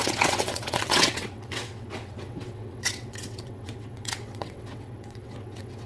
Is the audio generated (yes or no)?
yes